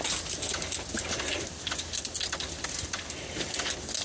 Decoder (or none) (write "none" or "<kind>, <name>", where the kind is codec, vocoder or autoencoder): none